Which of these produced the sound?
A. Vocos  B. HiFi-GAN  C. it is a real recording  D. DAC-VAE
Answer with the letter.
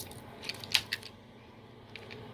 C